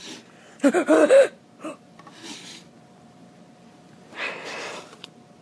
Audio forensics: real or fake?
fake